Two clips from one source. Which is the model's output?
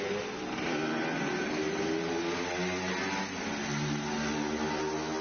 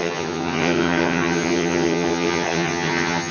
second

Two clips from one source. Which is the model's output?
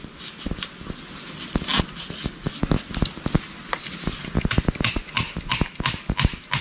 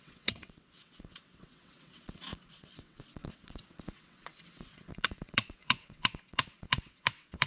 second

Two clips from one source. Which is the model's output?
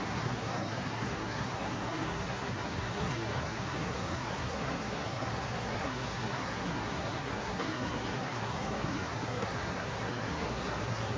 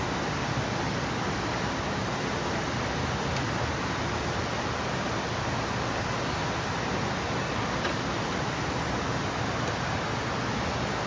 first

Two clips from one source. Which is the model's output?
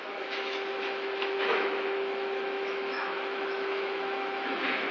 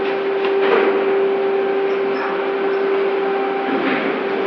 first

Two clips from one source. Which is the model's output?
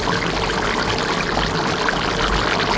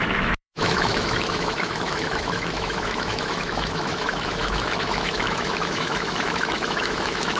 second